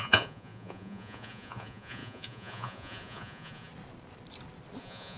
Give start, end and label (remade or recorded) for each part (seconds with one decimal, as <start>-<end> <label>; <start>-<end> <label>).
0.0-3.7 remade; 3.7-4.8 recorded; 4.8-5.2 remade